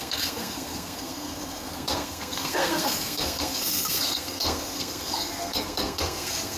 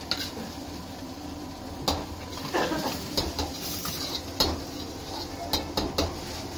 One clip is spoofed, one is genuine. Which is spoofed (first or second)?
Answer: first